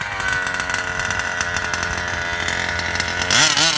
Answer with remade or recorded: recorded